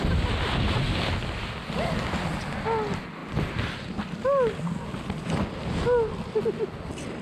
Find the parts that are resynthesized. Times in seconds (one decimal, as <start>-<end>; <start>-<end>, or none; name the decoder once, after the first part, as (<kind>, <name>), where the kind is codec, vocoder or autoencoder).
none